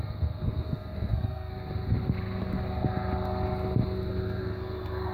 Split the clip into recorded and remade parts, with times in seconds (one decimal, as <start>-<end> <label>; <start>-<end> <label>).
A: 0.0-1.5 remade; 1.5-4.4 recorded; 4.4-5.1 remade